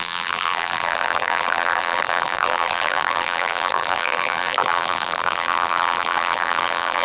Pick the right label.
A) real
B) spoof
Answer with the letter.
B